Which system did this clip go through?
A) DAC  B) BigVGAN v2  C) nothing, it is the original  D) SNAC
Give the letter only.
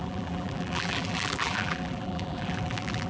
B